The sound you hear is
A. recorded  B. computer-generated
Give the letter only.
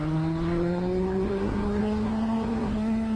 B